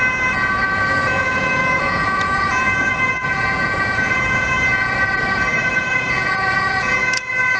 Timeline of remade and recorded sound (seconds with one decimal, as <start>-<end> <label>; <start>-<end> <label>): 0.0-1.0 recorded; 1.0-4.9 remade; 4.9-5.6 recorded; 5.6-7.6 remade